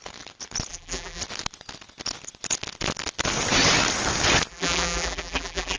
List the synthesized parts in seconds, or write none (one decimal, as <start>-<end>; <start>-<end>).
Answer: 0.7-1.2; 4.5-5.8